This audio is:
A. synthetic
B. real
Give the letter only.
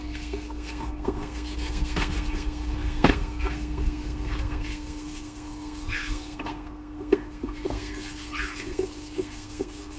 A